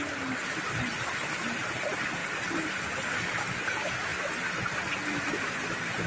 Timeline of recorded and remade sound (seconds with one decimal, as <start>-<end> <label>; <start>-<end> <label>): 0.0-6.1 recorded